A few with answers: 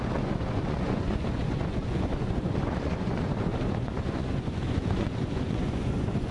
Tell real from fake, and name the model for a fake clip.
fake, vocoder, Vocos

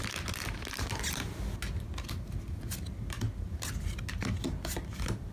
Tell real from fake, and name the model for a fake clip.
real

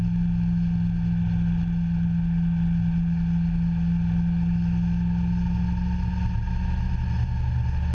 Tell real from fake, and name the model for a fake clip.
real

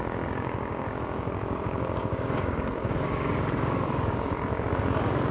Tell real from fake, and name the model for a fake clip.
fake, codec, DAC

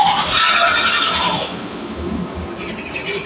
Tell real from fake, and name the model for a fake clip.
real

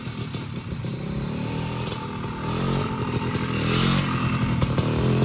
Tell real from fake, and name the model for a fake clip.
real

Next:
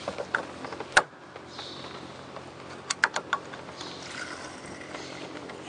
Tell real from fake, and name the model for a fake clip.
real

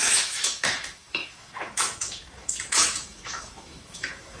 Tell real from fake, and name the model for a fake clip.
fake, autoencoder, DAC-VAE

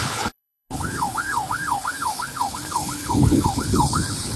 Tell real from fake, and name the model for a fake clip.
fake, codec, HILCodec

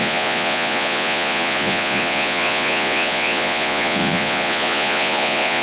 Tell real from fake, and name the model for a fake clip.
fake, vocoder, Vocos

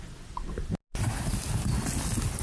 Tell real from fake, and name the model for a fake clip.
real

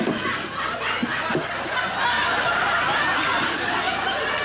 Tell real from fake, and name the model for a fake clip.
real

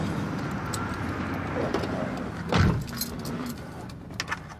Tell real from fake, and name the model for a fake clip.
real